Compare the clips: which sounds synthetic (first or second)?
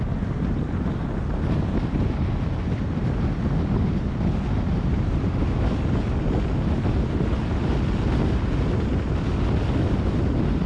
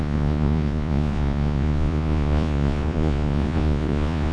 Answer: second